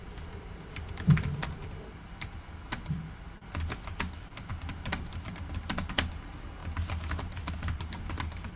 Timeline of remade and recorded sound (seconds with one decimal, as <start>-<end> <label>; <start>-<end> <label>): 0.0-8.6 recorded